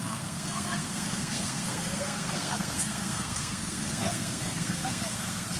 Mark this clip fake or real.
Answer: fake